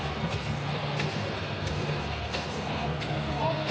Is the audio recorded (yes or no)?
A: no